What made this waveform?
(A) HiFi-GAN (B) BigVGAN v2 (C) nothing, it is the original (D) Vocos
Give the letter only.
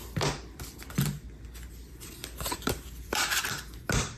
B